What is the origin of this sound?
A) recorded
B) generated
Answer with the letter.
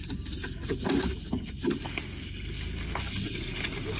A